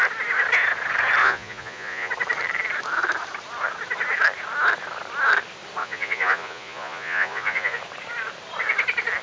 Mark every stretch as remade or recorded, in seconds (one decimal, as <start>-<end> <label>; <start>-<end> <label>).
0.0-1.2 recorded; 1.2-2.1 remade; 2.1-5.8 recorded; 5.8-7.8 remade; 7.8-9.2 recorded